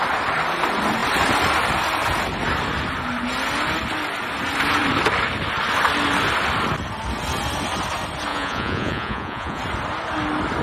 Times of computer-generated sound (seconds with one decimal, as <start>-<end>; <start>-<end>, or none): 8.3-9.6